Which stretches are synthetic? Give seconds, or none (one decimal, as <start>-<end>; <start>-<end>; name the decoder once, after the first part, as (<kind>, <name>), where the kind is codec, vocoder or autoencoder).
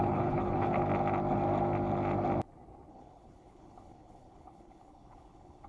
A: 0.0-0.8 (codec, HILCodec); 2.9-5.7